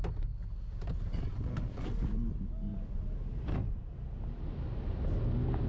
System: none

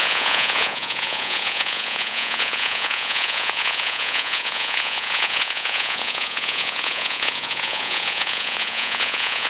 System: vocoder, Vocos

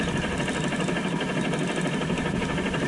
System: none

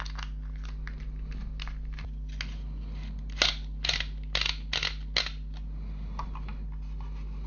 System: none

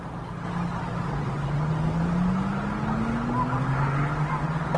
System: none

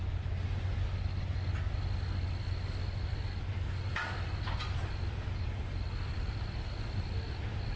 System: none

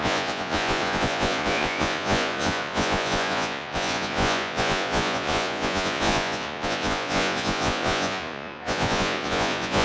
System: vocoder, Vocos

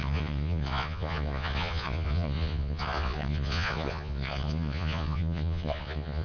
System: vocoder, Vocos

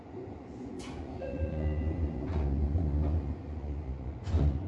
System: vocoder, Vocos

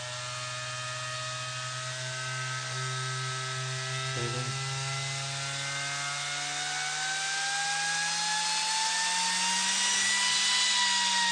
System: none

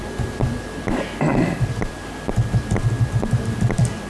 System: none